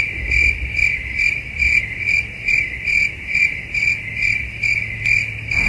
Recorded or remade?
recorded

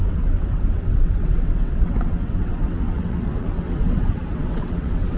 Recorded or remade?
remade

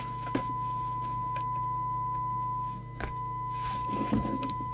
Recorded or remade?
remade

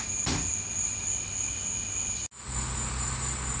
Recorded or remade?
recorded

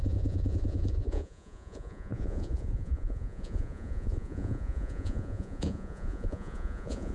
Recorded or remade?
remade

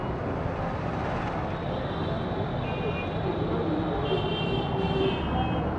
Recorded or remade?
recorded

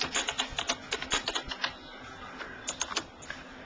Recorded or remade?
recorded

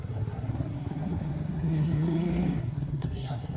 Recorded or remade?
remade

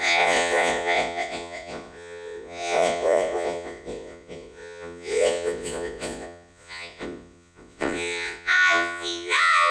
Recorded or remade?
remade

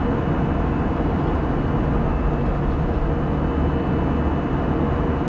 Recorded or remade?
recorded